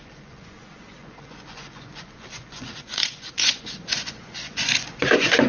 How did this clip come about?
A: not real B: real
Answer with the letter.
A